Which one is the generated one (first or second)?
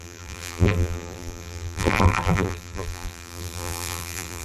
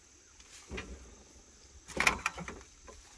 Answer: first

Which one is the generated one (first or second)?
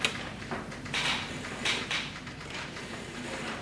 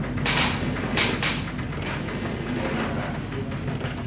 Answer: first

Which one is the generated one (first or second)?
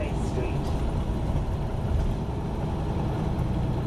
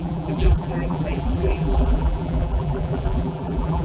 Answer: second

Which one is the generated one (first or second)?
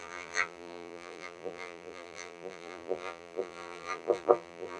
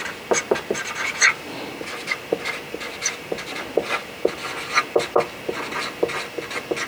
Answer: first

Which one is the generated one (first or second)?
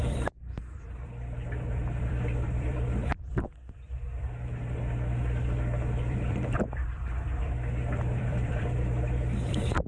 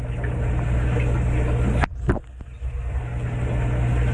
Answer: first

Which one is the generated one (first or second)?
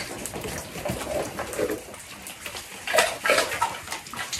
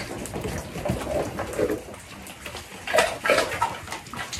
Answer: first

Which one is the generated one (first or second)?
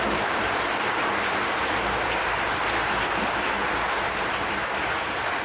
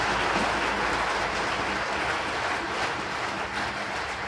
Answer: first